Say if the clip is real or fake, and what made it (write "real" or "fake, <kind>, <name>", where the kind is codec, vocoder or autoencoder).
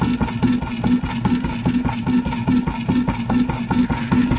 real